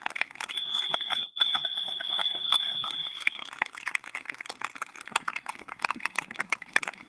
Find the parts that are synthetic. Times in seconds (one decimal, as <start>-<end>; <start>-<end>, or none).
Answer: 0.0-7.1